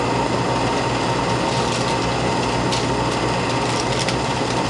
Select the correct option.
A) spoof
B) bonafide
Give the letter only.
B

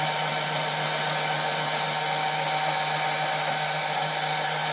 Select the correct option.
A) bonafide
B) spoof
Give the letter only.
A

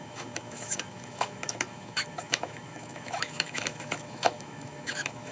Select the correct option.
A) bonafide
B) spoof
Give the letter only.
B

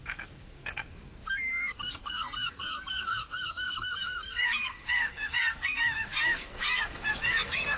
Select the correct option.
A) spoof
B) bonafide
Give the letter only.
A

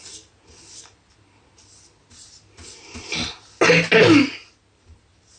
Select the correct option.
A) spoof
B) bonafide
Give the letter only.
B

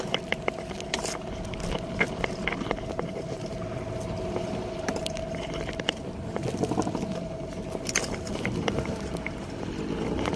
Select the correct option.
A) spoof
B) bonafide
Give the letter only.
B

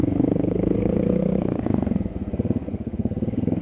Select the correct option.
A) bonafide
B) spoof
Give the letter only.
B